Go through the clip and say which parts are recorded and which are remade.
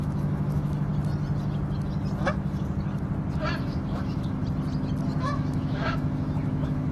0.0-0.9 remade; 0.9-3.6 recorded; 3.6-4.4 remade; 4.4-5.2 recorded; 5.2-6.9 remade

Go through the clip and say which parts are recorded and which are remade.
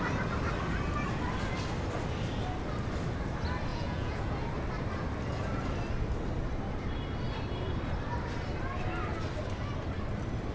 0.0-3.7 recorded; 3.7-4.3 remade; 4.3-10.5 recorded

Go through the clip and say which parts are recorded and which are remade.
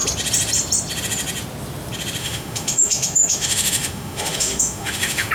0.0-2.2 recorded; 2.2-5.3 remade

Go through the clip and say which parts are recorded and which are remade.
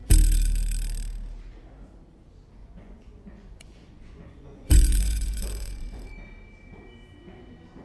0.0-2.6 recorded; 2.6-6.1 remade; 6.1-7.8 recorded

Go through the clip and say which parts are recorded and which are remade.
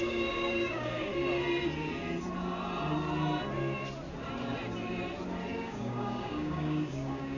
0.0-1.1 remade; 1.1-5.5 recorded; 5.5-7.4 remade